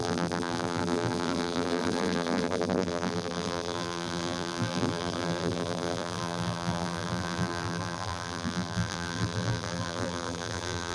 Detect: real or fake fake